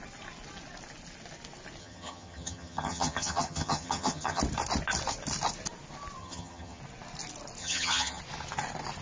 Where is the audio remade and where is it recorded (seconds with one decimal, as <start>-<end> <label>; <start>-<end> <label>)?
0.0-1.8 recorded; 1.8-4.4 remade; 4.4-6.2 recorded; 6.2-6.8 remade; 6.8-7.6 recorded; 7.6-8.2 remade; 8.2-9.0 recorded